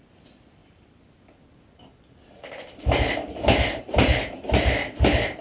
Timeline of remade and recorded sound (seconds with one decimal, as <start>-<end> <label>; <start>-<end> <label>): 0.0-5.4 recorded